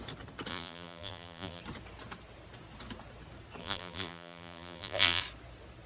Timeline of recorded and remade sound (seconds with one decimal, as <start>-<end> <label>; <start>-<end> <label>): 0.0-0.5 recorded; 0.5-1.6 remade; 1.6-3.6 recorded; 3.6-5.2 remade; 5.2-5.9 recorded